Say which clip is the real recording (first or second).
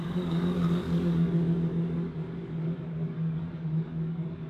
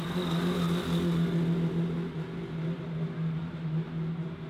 second